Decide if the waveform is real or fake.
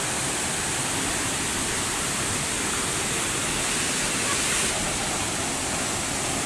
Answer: real